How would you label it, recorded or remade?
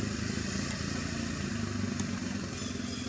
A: recorded